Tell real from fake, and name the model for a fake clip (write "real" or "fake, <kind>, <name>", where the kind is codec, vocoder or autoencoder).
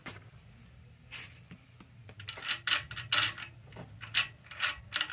real